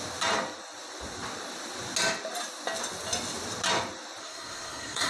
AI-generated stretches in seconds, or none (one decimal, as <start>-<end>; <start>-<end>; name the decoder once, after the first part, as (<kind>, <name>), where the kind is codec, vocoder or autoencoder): 4.2-5.1 (codec, SNAC)